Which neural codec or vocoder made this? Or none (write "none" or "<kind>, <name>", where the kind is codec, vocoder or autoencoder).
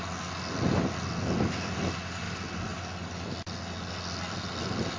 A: none